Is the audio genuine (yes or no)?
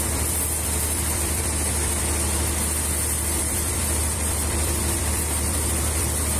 no